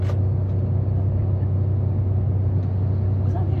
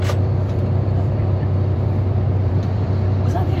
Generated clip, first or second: second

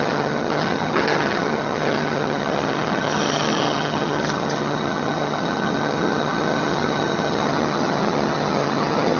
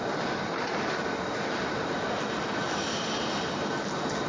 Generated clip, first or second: first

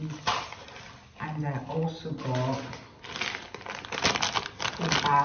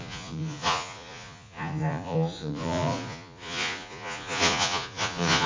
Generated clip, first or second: second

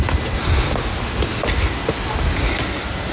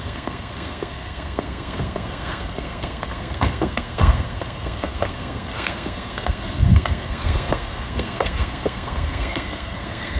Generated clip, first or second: second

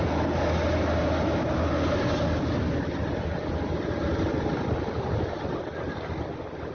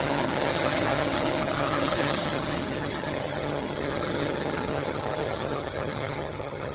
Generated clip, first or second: second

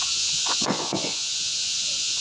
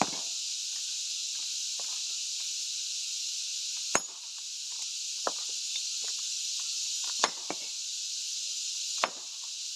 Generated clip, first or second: first